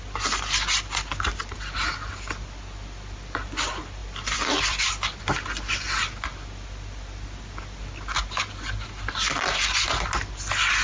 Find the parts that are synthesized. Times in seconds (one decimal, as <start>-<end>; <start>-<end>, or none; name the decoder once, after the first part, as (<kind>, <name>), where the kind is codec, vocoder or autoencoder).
4.0-5.2 (vocoder, BigVGAN v2)